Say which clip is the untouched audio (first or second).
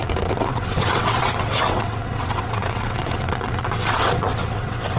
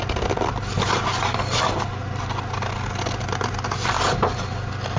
second